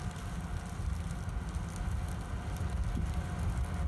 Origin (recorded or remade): recorded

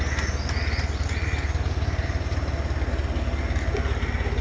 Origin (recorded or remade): recorded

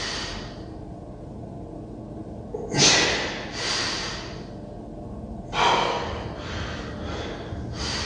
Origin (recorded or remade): recorded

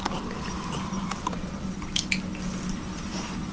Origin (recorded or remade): recorded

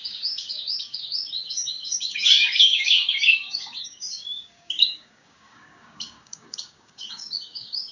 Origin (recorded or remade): remade